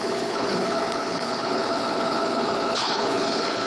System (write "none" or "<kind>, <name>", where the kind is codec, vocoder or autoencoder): codec, HILCodec